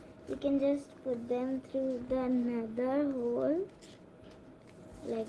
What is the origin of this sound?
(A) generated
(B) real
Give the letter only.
B